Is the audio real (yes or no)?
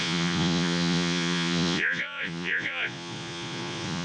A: no